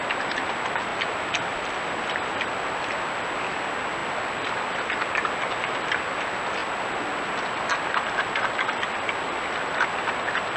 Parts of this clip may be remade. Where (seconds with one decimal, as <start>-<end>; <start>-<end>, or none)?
none